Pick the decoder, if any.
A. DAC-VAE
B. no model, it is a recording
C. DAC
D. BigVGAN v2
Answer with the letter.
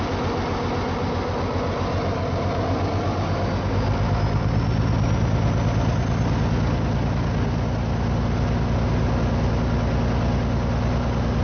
B